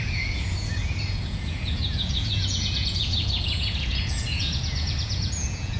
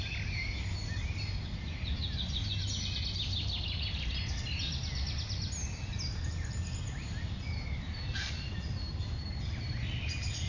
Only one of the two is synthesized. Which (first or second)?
first